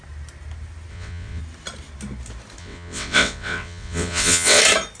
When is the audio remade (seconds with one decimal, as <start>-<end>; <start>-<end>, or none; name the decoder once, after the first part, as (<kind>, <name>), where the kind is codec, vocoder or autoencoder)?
0.9-1.4 (vocoder, WaveNeXt); 2.6-4.6